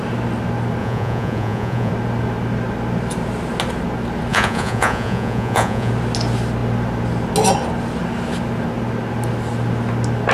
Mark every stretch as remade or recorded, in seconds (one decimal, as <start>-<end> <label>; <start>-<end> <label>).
0.0-0.8 recorded; 0.8-1.9 remade; 1.9-4.3 recorded; 4.3-5.9 remade; 5.9-10.3 recorded